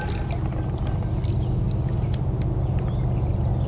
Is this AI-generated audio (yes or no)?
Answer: no